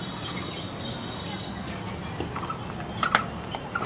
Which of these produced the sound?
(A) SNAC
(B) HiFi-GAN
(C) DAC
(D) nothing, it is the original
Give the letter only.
D